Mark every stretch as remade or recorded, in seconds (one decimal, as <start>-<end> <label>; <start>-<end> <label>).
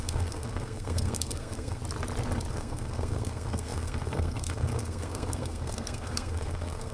0.0-1.8 remade; 1.8-2.5 recorded; 2.5-6.9 remade